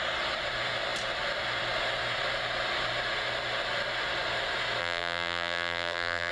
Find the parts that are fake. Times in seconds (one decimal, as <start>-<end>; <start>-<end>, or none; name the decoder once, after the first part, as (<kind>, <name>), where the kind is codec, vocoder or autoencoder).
4.8-6.3 (vocoder, BigVGAN v2)